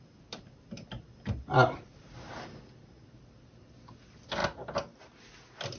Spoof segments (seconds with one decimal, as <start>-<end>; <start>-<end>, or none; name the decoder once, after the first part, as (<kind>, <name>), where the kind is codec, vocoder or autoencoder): 1.9-2.5 (vocoder, BigVGAN v2)